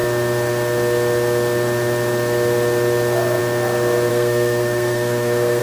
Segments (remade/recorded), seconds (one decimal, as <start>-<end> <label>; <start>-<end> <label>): 0.0-4.1 recorded; 4.1-5.6 remade